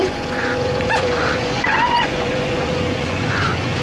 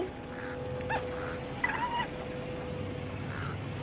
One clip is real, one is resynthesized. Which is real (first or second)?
second